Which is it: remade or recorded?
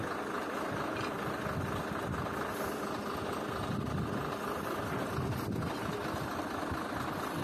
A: recorded